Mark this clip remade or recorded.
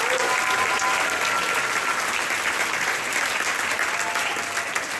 recorded